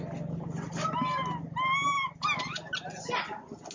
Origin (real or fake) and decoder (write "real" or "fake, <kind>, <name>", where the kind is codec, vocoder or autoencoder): real